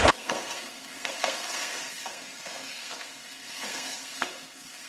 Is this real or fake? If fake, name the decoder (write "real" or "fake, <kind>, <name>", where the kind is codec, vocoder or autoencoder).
fake, codec, SNAC